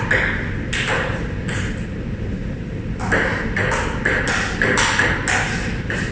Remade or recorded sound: recorded